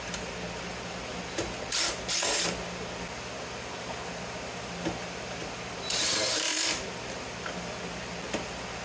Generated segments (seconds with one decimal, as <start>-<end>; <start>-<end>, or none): none